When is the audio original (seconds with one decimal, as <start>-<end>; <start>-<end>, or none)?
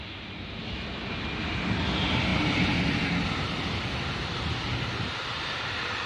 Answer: 0.6-1.5; 2.3-5.0